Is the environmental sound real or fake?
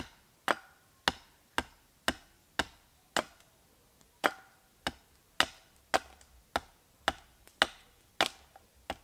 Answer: real